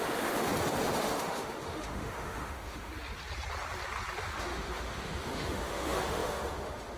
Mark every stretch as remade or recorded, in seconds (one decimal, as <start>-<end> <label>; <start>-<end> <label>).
0.0-0.5 remade; 0.5-1.0 recorded; 1.0-2.9 remade; 2.9-4.4 recorded; 4.4-7.0 remade